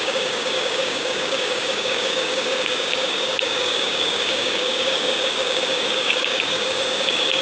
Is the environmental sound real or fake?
fake